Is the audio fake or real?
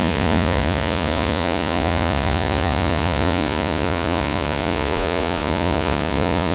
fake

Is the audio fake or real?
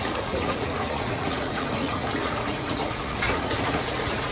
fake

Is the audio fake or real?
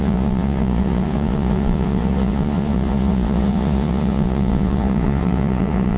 fake